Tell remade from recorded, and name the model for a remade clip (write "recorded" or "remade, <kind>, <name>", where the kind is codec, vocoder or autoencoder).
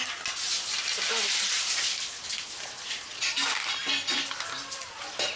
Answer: recorded